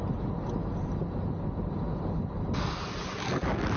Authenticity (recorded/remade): recorded